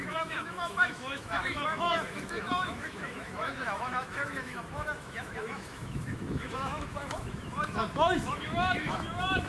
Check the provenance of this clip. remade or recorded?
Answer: remade